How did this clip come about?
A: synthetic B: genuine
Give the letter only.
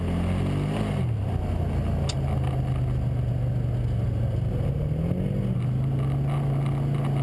B